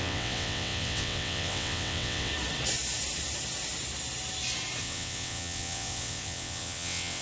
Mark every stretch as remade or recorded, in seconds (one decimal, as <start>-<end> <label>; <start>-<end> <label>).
0.0-2.3 remade; 2.3-4.8 recorded; 4.8-7.2 remade